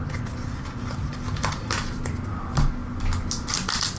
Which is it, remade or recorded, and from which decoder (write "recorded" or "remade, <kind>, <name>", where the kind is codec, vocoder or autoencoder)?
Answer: recorded